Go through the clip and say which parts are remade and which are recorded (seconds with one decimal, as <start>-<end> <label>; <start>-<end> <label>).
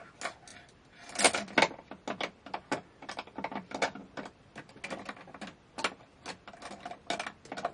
0.0-7.7 recorded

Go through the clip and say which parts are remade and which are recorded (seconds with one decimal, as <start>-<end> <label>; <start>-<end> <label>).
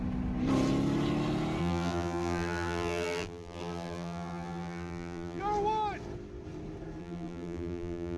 0.0-1.6 recorded; 1.6-5.4 remade; 5.4-7.0 recorded; 7.0-8.2 remade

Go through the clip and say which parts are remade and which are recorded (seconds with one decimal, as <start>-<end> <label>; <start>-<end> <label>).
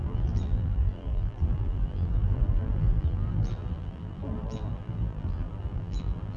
0.0-6.4 remade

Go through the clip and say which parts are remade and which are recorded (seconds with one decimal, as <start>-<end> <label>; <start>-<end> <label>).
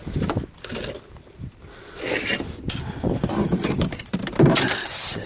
0.0-3.2 recorded; 3.2-5.3 remade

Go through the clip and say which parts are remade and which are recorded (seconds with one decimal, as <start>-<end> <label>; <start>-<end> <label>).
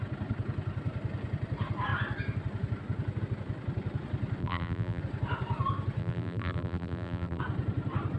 0.0-4.4 recorded; 4.4-5.0 remade; 5.0-6.0 recorded; 6.0-7.4 remade; 7.4-8.2 recorded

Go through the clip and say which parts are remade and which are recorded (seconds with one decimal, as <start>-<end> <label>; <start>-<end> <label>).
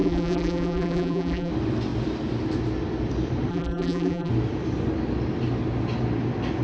0.0-1.5 remade; 1.5-3.5 recorded; 3.5-4.3 remade; 4.3-6.6 recorded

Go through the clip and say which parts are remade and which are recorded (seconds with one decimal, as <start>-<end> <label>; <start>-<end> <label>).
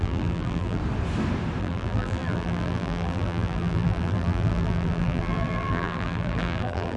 0.0-0.8 remade; 0.8-1.6 recorded; 1.6-7.0 remade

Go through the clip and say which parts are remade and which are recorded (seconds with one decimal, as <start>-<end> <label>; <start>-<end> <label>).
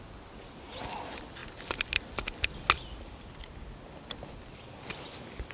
0.0-5.5 recorded